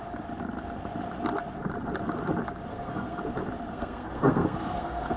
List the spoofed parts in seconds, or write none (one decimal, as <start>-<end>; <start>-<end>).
2.7-3.2; 3.7-5.2